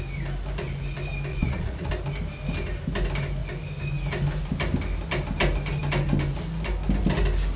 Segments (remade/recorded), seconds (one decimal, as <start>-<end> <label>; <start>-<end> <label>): 0.0-1.3 recorded; 1.3-1.9 remade; 1.9-7.6 recorded